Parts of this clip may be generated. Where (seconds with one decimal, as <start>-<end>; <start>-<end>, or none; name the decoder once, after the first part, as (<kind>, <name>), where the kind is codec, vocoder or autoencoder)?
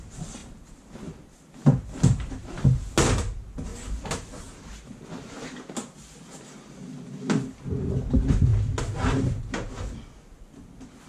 none